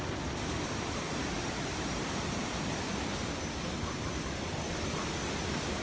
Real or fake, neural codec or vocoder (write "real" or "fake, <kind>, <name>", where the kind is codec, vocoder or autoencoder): real